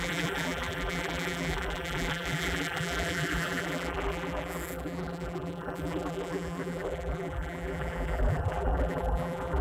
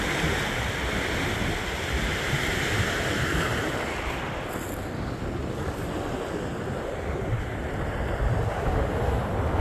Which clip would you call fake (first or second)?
first